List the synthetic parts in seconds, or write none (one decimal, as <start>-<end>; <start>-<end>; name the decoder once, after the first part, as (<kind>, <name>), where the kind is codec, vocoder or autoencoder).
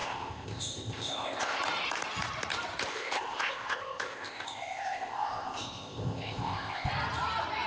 0.0-1.6 (codec, ZipCodec); 2.9-6.9